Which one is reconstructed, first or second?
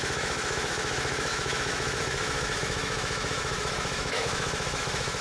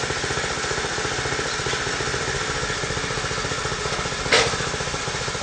first